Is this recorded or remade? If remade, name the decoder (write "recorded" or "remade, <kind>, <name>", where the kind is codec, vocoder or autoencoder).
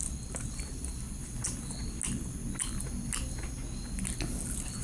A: recorded